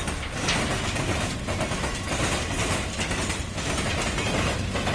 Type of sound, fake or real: real